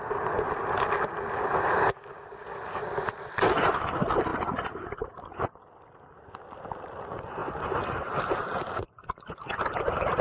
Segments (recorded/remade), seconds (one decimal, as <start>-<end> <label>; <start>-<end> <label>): 0.0-4.3 recorded; 4.3-4.9 remade; 4.9-10.2 recorded